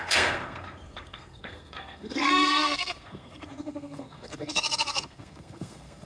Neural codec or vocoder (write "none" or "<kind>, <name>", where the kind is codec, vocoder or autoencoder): codec, SNAC